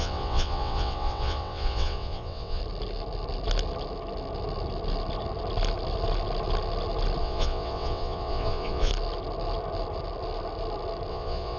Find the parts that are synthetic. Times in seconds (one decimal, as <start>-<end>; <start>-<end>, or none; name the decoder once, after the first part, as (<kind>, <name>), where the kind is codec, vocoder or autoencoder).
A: 0.0-2.6 (vocoder, WaveNeXt); 7.2-8.9; 11.1-11.6